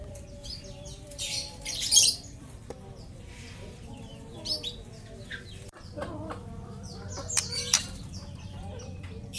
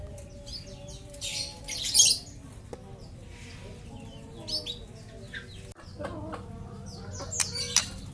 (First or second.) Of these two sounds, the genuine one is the second